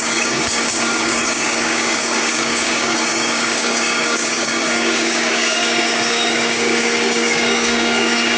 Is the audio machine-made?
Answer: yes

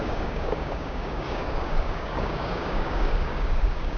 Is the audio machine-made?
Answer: yes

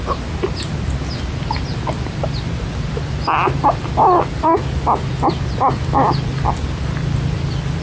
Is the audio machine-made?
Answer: no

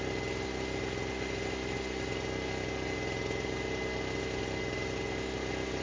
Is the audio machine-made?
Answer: no